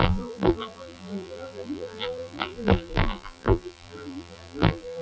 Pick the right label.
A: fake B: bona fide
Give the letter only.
A